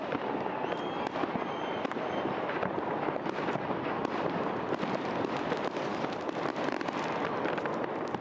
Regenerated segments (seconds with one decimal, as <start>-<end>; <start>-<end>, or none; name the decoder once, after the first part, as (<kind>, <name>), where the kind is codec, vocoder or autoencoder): 0.0-8.2 (vocoder, BigVGAN v2)